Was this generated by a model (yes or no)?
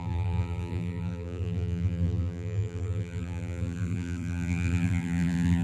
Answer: yes